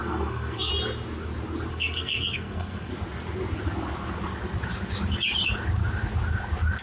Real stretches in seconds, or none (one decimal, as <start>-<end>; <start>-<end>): 0.7-1.7; 2.9-6.8